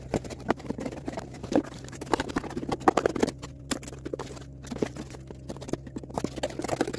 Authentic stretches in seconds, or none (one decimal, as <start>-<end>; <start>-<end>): 2.6-7.0